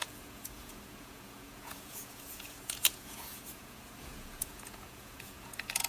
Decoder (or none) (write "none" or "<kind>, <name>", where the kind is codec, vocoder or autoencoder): vocoder, Vocos